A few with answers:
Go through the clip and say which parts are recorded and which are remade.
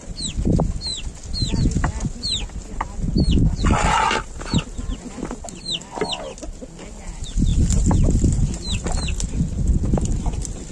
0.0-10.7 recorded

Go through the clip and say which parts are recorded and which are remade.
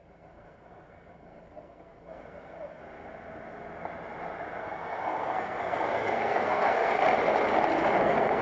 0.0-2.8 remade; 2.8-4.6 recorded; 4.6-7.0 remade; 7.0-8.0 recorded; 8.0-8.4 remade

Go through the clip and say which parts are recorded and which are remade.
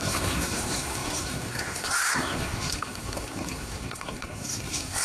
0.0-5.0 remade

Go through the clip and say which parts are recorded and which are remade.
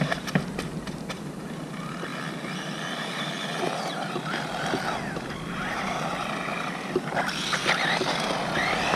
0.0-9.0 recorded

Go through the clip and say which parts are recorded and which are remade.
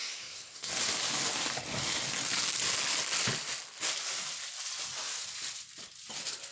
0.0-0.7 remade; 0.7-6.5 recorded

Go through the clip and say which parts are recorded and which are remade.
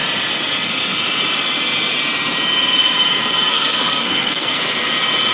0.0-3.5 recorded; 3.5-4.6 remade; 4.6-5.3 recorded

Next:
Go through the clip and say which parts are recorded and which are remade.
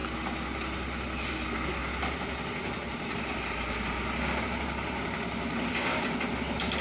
0.0-6.8 recorded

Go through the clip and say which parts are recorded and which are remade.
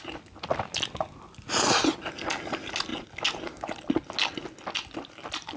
0.0-5.6 recorded